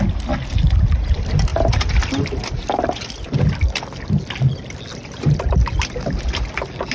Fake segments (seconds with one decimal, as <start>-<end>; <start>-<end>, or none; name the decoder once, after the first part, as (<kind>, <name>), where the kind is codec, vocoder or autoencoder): none